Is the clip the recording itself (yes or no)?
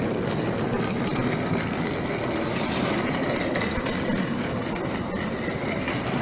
yes